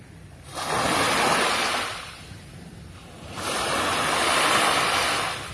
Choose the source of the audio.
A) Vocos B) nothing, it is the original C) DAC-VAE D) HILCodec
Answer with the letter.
B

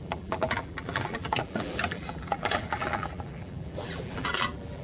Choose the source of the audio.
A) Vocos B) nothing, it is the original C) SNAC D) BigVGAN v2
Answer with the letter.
D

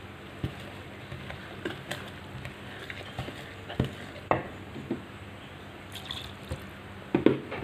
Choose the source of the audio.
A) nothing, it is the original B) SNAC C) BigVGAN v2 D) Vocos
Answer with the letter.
A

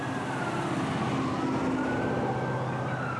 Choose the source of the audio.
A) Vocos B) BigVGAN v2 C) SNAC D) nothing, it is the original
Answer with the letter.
D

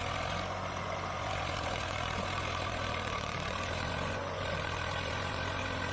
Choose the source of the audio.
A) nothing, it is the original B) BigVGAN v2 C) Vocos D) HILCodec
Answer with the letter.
C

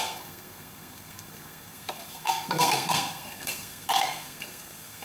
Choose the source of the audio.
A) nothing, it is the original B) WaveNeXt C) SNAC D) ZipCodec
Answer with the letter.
C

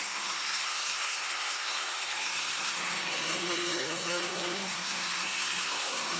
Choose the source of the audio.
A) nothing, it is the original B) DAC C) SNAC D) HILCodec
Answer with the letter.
C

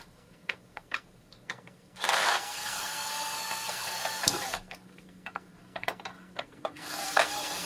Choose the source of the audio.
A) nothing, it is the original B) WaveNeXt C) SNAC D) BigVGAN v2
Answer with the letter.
C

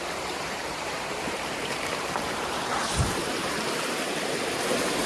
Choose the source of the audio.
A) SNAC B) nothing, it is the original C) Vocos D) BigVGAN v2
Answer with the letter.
D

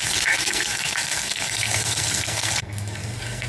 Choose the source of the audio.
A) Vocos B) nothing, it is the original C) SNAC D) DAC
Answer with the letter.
C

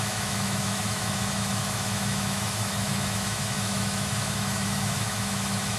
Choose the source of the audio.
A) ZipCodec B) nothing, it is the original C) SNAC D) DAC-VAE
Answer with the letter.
D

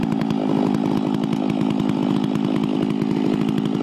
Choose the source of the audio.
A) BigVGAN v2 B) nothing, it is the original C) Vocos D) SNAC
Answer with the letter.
B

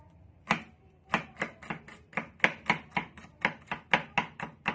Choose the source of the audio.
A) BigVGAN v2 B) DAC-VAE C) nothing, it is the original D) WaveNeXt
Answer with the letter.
C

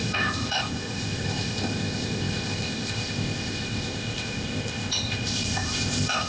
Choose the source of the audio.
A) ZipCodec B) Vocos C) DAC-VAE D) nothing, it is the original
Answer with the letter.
A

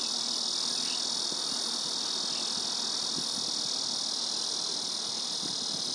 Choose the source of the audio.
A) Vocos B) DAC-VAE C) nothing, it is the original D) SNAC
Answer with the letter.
C